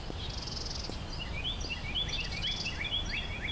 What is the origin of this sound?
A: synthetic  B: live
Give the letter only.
B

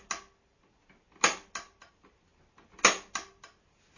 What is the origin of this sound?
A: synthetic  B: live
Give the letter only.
B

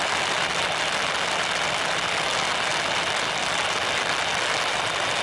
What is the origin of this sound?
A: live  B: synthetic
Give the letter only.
A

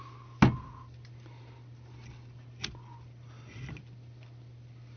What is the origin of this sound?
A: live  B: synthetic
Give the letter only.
A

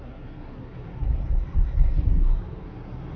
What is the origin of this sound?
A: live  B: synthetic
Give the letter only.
B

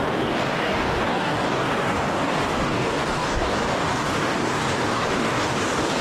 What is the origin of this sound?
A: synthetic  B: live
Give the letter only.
A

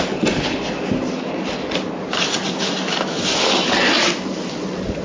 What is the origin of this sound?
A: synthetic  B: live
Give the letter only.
B